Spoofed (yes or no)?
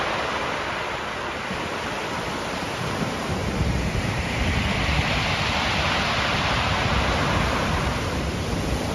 no